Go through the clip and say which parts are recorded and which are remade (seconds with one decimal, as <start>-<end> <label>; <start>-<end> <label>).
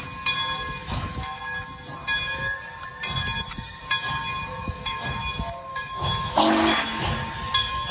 0.0-0.8 recorded; 0.8-1.4 remade; 1.4-4.5 recorded; 4.5-5.2 remade; 5.2-5.7 recorded; 5.7-6.4 remade; 6.4-7.9 recorded